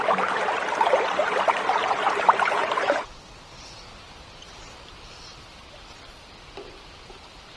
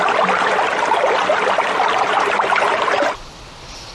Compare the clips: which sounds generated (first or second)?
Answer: first